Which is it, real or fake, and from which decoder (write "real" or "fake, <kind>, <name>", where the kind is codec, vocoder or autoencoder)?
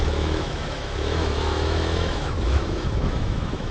fake, autoencoder, DAC-VAE